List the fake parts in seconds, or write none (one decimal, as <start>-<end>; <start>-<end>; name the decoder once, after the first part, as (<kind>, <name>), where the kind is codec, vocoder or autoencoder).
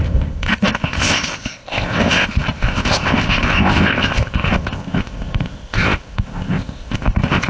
0.0-7.5 (codec, ZipCodec)